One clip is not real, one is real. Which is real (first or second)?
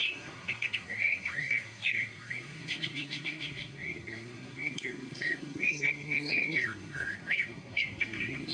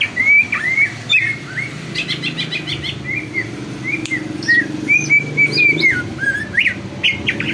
second